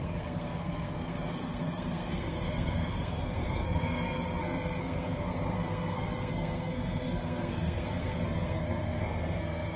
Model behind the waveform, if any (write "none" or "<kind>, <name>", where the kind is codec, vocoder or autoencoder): codec, SNAC